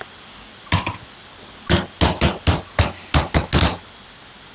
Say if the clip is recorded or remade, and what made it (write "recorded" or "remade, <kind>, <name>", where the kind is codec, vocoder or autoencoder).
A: recorded